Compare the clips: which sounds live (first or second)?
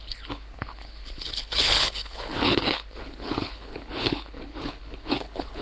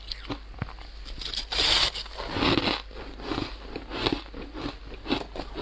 second